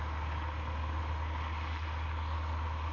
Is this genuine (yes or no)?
yes